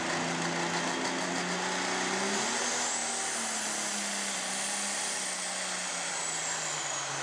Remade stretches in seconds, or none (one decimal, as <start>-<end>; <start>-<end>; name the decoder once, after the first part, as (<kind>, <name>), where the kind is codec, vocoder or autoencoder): none